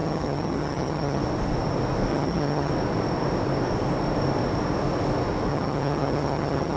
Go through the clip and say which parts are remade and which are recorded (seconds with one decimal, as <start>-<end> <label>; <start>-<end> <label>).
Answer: 0.0-1.2 remade; 1.2-2.1 recorded; 2.1-2.7 remade; 2.7-5.5 recorded; 5.5-6.8 remade